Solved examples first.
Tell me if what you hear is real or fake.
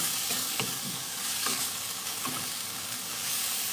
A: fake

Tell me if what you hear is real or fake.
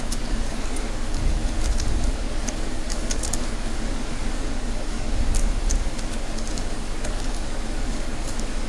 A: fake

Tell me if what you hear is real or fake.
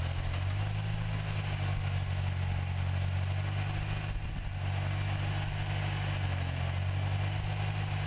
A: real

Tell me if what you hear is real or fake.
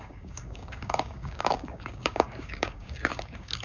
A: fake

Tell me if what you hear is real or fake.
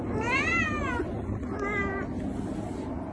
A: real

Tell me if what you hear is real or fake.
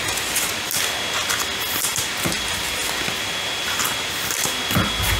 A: real